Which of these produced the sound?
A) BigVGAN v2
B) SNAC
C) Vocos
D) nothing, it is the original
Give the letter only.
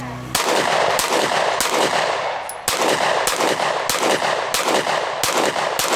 D